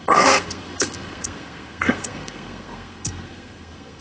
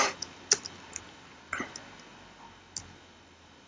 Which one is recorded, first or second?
second